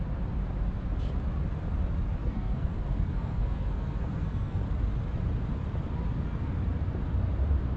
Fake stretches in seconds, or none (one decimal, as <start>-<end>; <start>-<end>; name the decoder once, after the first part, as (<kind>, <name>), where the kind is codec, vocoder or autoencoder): 2.2-4.6 (codec, SNAC)

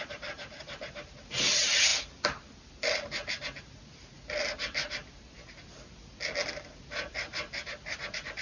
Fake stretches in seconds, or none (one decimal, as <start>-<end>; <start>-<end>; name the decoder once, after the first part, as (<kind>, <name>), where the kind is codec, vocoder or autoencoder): none

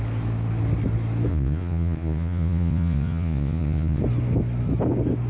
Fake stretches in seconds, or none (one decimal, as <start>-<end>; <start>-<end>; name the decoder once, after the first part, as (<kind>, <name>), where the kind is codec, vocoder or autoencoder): 1.3-4.0 (vocoder, Vocos)

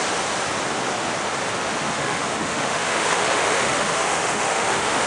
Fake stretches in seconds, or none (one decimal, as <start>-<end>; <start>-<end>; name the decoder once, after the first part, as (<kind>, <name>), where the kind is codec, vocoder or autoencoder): 1.6-5.1 (autoencoder, DAC-VAE)

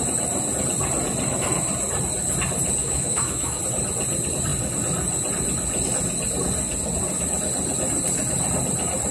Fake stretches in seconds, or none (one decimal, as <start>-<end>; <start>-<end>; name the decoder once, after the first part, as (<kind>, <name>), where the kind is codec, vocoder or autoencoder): 2.8-3.6 (autoencoder, DAC-VAE)

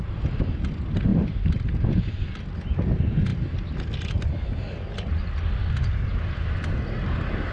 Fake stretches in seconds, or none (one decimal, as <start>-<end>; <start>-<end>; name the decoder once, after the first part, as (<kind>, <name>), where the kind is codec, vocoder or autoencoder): none

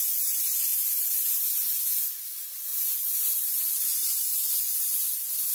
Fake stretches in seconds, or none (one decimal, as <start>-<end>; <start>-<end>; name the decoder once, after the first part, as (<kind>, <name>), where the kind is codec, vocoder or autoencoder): none